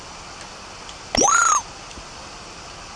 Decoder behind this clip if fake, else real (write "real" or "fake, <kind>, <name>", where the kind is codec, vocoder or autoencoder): real